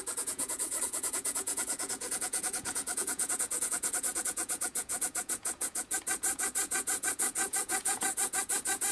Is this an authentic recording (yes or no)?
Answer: no